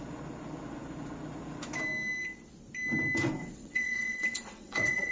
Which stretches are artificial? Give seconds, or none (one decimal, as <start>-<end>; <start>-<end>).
3.4-5.1